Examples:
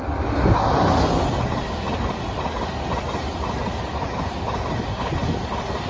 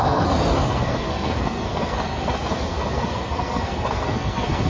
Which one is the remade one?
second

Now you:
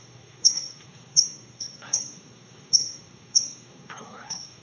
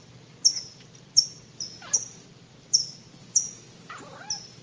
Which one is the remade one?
first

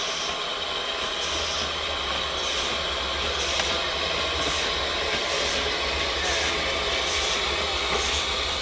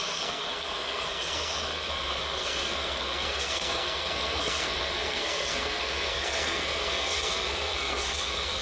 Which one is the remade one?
second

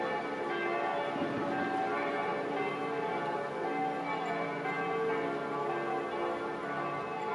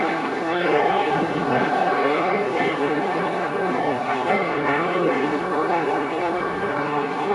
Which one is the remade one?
second